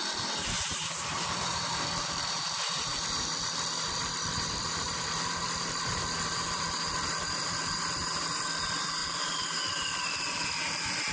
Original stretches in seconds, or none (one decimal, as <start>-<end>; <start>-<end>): none